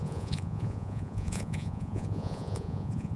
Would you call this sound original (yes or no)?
no